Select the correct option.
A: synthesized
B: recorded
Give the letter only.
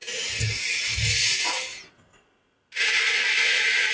B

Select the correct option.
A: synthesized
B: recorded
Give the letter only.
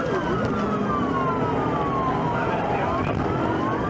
B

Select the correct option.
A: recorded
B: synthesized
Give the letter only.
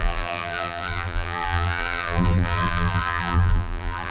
B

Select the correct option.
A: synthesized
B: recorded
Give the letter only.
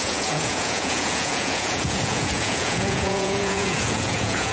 A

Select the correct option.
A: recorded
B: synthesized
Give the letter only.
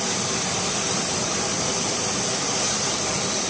A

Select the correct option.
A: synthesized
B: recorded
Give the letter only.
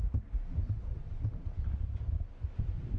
B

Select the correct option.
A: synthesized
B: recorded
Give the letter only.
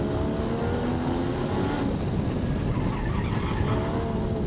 B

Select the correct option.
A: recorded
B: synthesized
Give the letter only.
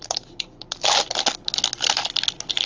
A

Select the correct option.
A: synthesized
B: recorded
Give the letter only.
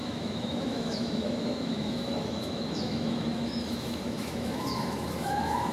A